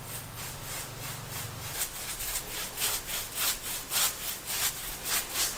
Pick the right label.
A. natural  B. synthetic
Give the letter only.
A